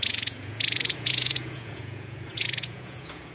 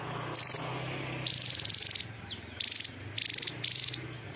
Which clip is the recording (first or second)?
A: second